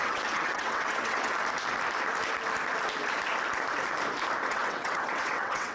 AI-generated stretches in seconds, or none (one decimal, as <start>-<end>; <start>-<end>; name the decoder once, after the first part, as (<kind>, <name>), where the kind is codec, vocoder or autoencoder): 0.0-1.3 (vocoder, WaveNeXt); 4.5-5.7